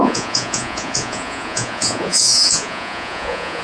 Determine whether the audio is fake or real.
fake